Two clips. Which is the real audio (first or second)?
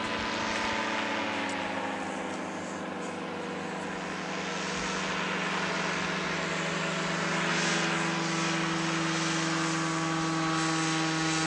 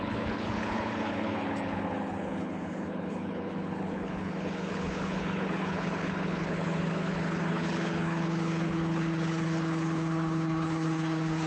first